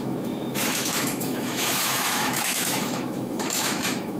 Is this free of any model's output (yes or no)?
no